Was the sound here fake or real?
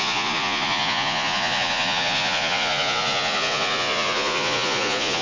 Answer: fake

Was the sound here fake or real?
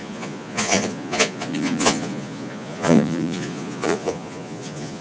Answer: fake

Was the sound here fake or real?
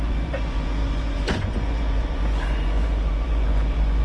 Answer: fake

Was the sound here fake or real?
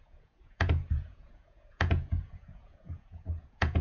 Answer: fake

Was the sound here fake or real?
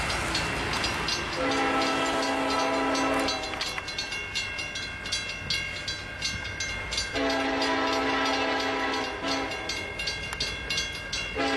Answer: real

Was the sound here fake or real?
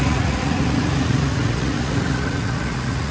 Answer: fake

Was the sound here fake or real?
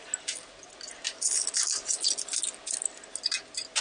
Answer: real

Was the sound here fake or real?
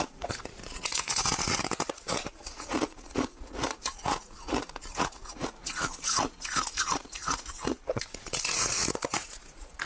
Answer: fake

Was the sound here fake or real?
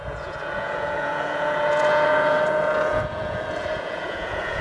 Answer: fake